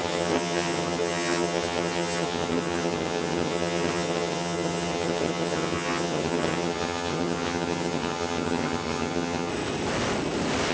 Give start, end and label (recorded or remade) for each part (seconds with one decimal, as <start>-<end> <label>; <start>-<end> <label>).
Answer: 0.0-9.5 remade; 9.5-10.7 recorded